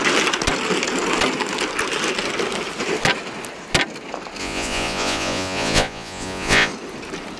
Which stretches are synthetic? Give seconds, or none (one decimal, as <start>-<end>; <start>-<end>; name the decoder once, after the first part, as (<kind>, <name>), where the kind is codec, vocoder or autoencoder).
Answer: 4.4-6.7 (vocoder, Vocos)

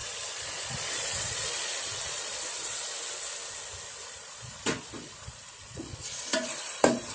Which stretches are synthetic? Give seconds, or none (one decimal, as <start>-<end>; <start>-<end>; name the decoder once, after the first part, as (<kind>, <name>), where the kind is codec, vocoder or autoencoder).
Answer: 0.0-2.9 (vocoder, Vocos); 4.1-7.1

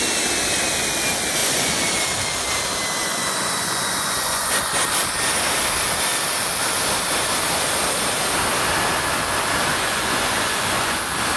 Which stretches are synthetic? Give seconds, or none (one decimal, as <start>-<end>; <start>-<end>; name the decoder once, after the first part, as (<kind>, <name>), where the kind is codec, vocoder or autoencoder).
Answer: 1.4-1.9 (vocoder, Vocos); 3.0-4.7; 9.7-11.0

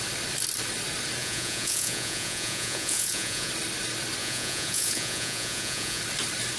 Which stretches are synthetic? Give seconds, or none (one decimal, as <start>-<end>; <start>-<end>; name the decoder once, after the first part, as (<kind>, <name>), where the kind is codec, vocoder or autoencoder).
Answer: 1.2-3.5 (vocoder, Vocos); 4.2-6.0

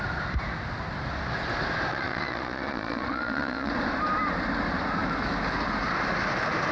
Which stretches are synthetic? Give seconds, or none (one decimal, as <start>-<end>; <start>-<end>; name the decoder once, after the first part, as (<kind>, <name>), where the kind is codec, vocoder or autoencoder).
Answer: 1.9-3.7 (vocoder, Vocos)

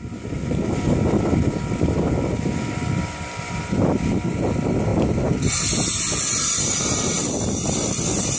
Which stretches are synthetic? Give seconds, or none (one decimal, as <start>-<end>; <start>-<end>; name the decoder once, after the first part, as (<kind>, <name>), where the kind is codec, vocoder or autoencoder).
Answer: none